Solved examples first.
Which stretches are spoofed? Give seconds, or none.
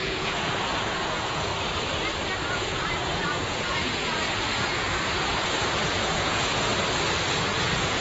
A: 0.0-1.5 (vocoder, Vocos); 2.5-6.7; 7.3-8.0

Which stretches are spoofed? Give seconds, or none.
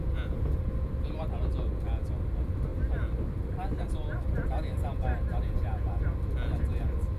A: 0.0-0.7 (vocoder, Vocos); 4.9-6.0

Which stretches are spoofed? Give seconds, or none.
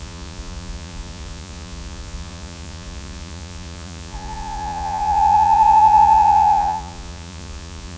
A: 0.0-8.0 (vocoder, Vocos)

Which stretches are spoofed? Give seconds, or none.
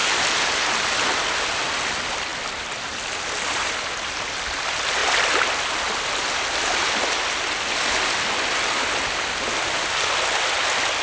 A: none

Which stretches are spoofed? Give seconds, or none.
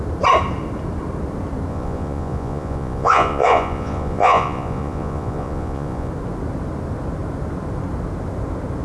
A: 1.7-6.1 (vocoder, Vocos)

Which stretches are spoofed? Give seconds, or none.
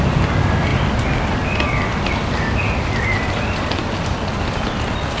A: none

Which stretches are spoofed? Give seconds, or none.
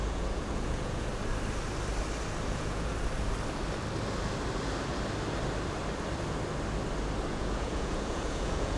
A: 0.0-1.1 (vocoder, Vocos); 2.5-2.9; 7.3-8.8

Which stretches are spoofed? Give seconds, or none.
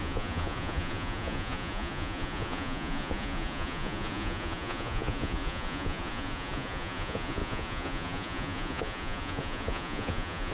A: 0.0-10.5 (vocoder, Vocos)